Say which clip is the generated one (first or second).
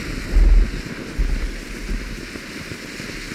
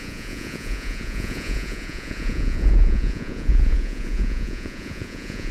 second